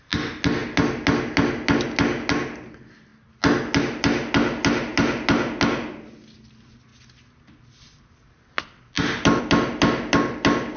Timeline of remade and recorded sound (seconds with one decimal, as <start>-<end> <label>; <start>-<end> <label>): 0.0-10.8 recorded